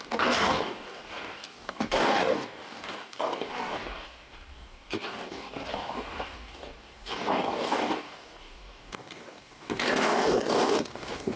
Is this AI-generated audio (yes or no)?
yes